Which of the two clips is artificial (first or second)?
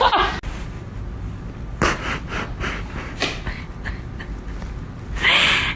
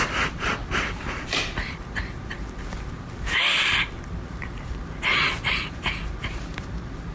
second